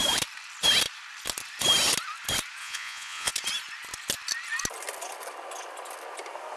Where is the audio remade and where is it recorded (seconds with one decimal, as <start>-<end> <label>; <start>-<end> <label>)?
0.0-2.6 recorded; 2.6-3.3 remade; 3.3-6.6 recorded